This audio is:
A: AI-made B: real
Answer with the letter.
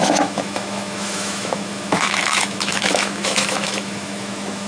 A